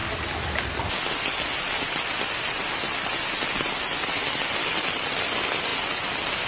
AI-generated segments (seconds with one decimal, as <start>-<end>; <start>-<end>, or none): none